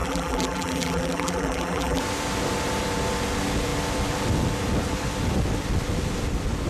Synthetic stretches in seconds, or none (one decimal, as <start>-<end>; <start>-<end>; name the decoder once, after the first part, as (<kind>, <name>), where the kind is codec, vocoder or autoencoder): 0.0-2.0 (vocoder, BigVGAN v2)